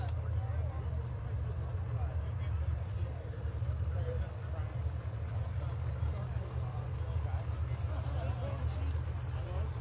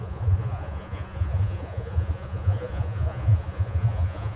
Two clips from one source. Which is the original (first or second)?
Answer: first